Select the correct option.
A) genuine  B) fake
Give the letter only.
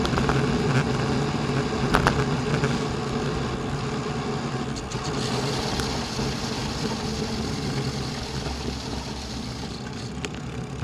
A